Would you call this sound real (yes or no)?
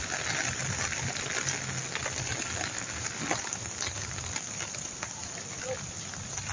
yes